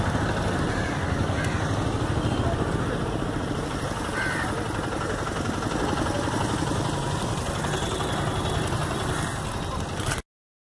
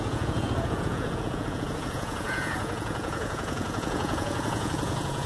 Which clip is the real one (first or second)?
first